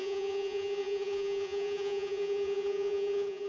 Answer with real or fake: fake